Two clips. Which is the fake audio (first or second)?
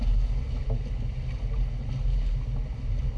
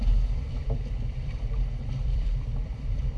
second